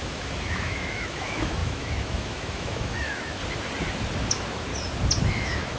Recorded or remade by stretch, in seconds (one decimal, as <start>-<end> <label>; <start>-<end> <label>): 0.0-3.4 remade; 3.4-4.3 recorded; 4.3-4.7 remade; 4.7-5.3 recorded; 5.3-5.8 remade